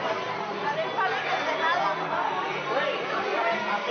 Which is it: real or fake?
real